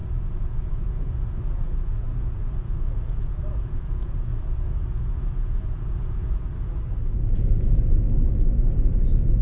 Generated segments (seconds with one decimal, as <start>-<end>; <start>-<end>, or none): 0.0-4.3; 4.9-6.5